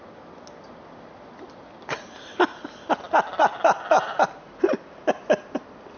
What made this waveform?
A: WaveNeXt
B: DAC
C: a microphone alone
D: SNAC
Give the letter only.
C